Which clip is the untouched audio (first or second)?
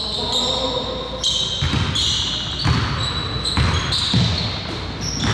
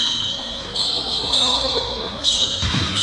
first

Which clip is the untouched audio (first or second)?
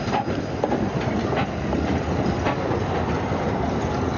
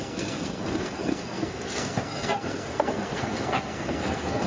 first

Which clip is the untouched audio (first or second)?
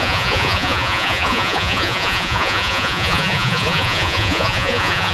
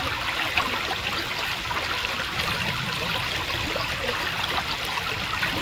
second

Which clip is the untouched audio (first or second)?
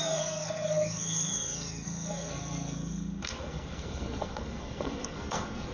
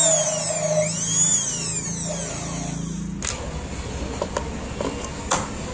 second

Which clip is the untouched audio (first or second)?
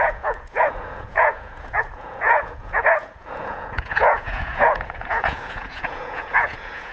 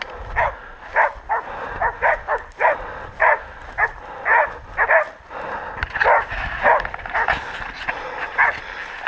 second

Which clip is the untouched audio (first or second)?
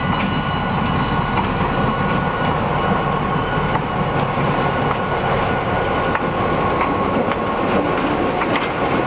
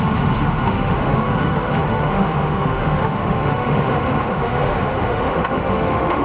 first